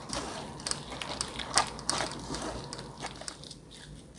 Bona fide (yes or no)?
yes